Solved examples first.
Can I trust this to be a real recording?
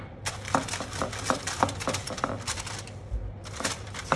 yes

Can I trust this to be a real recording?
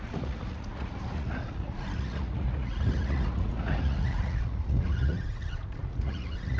no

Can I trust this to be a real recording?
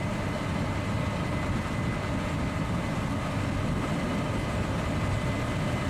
yes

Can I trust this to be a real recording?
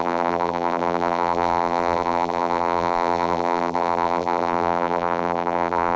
no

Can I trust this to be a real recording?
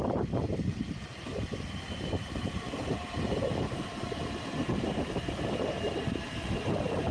no